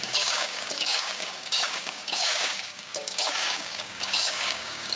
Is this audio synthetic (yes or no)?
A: yes